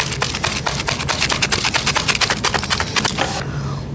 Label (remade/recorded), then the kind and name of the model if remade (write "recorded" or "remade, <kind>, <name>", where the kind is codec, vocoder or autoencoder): recorded